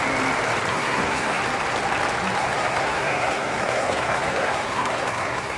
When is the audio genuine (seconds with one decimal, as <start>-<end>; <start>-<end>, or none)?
0.0-0.7; 1.4-2.4